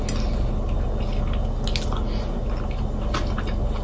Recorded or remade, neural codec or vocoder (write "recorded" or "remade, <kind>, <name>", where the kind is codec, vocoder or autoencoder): recorded